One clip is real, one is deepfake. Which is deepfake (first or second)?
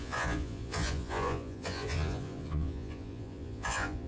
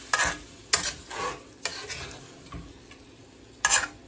first